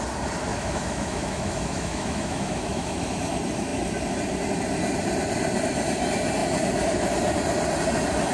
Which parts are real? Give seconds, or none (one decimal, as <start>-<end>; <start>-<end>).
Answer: 0.0-0.5; 3.2-8.3